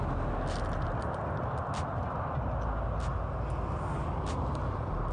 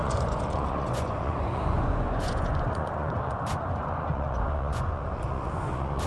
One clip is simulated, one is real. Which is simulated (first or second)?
second